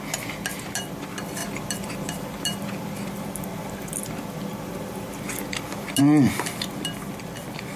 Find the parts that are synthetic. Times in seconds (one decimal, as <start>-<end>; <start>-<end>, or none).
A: none